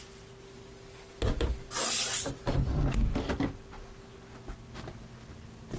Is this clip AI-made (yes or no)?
no